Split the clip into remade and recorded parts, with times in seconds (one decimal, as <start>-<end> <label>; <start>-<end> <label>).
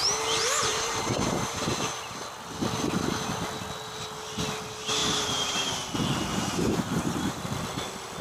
0.0-0.7 recorded; 0.7-1.6 remade; 1.6-5.0 recorded; 5.0-5.7 remade; 5.7-6.3 recorded; 6.3-7.4 remade; 7.4-8.2 recorded